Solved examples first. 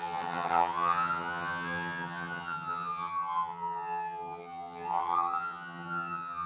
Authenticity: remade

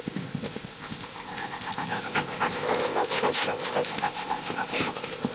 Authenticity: remade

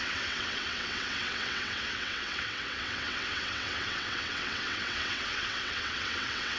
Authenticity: remade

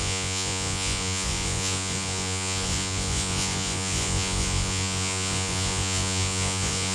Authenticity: remade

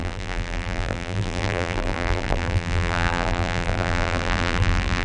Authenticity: remade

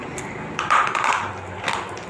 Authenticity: recorded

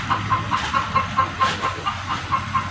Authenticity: recorded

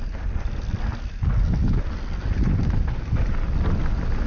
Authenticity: recorded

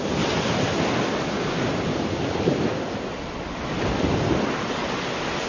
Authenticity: recorded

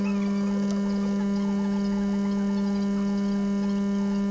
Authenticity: recorded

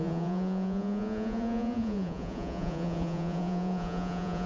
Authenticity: remade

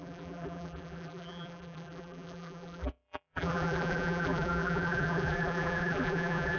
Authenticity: remade